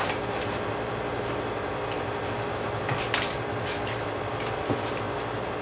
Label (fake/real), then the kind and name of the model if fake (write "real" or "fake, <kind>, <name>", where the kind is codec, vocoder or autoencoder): real